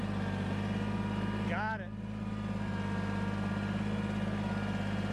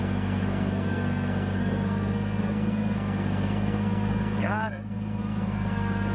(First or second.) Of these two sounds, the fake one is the second